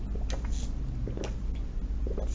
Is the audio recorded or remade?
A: recorded